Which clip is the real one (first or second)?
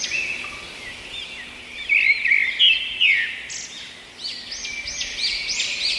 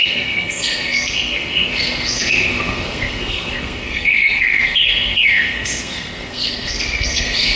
first